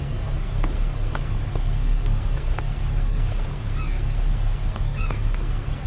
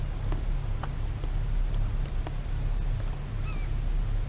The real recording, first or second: second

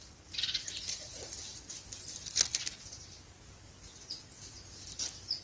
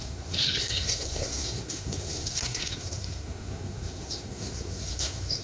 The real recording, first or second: first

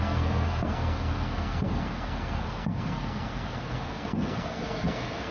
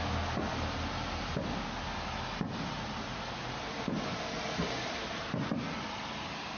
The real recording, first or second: second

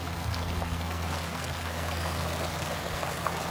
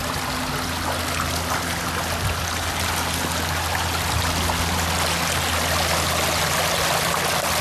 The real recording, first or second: second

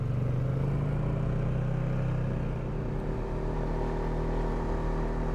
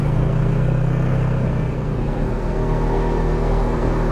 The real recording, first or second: first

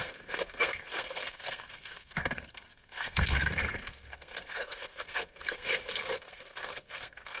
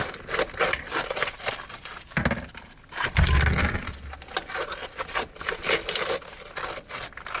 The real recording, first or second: second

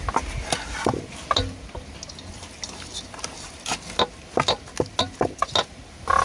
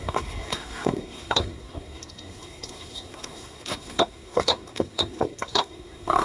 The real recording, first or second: first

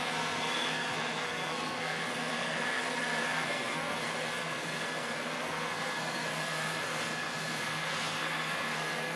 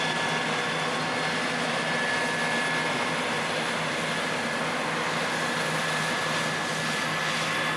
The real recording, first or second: second